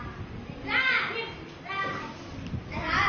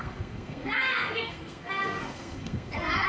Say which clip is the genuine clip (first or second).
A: first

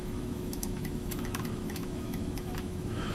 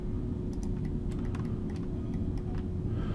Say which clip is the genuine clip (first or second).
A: second